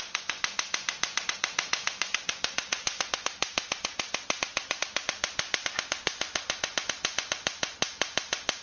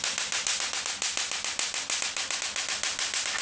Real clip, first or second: second